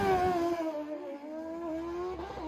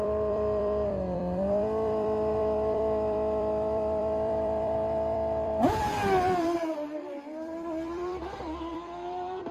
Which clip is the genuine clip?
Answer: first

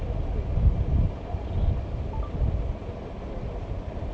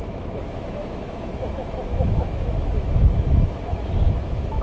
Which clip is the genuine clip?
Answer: first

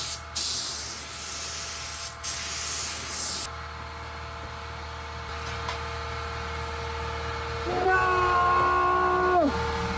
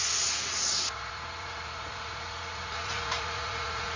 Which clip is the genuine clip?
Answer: first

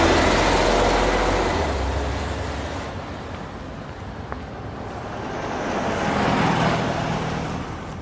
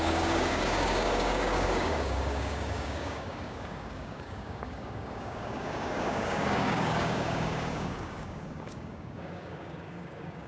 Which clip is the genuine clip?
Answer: first